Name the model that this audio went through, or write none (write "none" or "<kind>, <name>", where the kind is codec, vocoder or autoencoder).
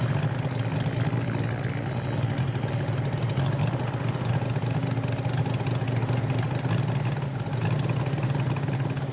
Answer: none